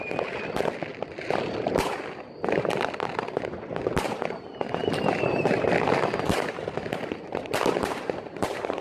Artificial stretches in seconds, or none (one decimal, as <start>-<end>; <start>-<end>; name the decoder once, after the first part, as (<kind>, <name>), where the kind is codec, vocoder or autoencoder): 0.9-2.1 (vocoder, BigVGAN v2); 4.8-8.8